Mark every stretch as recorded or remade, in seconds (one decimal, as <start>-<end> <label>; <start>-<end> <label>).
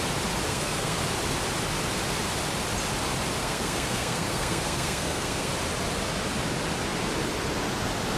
0.0-0.5 recorded; 0.5-1.0 remade; 1.0-3.4 recorded; 3.4-5.5 remade; 5.5-8.2 recorded